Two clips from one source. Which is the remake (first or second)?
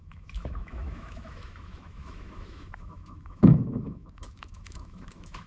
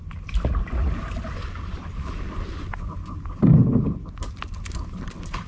first